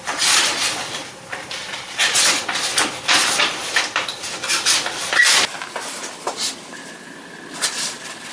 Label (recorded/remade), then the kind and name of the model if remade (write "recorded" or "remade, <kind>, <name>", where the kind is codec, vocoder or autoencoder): recorded